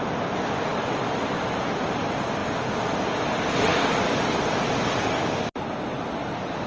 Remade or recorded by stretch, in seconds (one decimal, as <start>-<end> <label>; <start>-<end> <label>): 0.0-6.7 recorded

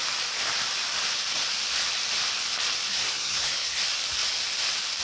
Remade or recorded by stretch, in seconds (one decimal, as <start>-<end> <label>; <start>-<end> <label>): 0.0-2.9 recorded; 2.9-3.8 remade; 3.8-5.0 recorded

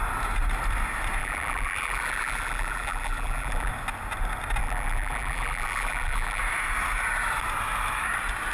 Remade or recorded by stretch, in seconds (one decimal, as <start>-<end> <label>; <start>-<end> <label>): 0.0-1.2 recorded; 1.2-3.7 remade; 3.7-4.6 recorded; 4.6-6.4 remade; 6.4-8.5 recorded

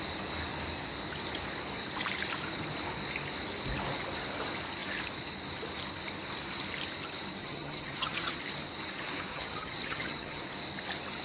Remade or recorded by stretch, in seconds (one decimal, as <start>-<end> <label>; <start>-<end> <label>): 0.0-7.4 recorded; 7.4-8.4 remade; 8.4-9.3 recorded; 9.3-10.4 remade; 10.4-11.2 recorded